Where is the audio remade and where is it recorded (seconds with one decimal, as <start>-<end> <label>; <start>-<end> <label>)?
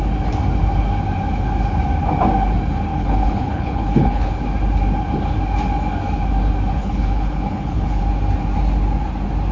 0.0-2.9 recorded; 2.9-4.4 remade; 4.4-6.8 recorded; 6.8-8.0 remade; 8.0-9.5 recorded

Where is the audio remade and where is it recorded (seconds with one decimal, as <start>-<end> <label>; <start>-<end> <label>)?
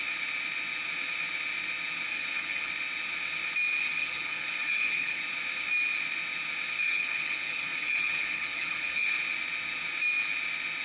0.0-2.1 recorded; 2.1-2.7 remade; 2.7-3.8 recorded; 3.8-5.2 remade; 5.2-6.8 recorded; 6.8-9.2 remade; 9.2-10.8 recorded